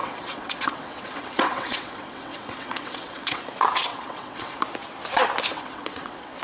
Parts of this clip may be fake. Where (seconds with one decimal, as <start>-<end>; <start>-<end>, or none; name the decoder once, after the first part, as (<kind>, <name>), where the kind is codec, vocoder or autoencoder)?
0.0-3.4 (vocoder, WaveNeXt); 3.9-4.6; 5.5-6.4